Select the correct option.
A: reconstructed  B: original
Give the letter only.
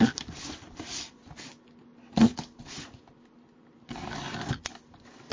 B